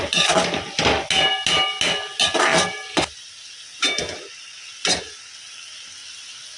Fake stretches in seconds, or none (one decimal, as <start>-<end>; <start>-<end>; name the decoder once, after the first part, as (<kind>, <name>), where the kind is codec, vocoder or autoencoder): none